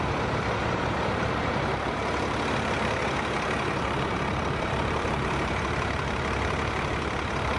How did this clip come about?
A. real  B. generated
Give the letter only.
B